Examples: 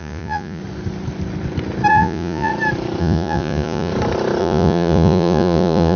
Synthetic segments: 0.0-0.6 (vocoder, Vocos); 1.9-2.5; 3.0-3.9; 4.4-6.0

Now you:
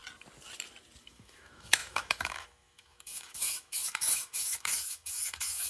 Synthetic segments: 1.0-5.7 (autoencoder, DAC-VAE)

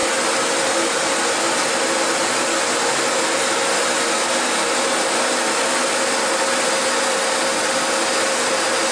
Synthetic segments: none

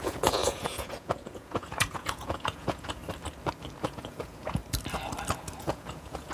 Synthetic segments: 0.0-3.0 (vocoder, Vocos); 3.8-4.6; 5.6-6.3